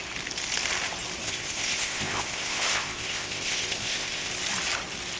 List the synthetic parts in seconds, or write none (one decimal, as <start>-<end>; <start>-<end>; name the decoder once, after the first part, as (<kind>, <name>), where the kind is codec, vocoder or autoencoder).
1.2-4.3 (codec, ZipCodec)